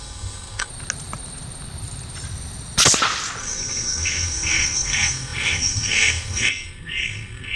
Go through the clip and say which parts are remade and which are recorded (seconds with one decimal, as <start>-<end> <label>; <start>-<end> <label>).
0.0-0.7 remade; 0.7-3.4 recorded; 3.4-7.6 remade

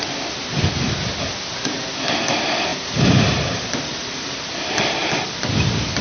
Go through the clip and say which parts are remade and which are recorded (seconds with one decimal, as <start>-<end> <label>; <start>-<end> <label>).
0.0-2.7 recorded; 2.7-4.5 remade; 4.5-5.0 recorded; 5.0-6.0 remade

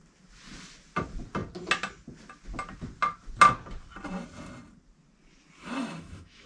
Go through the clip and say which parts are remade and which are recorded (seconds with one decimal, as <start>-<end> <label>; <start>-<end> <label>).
0.0-5.6 recorded; 5.6-6.5 remade